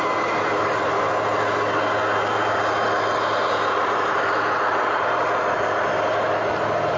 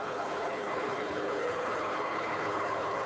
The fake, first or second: second